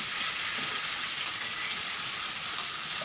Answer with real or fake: real